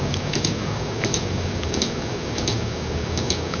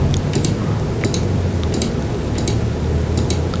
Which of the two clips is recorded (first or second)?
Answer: second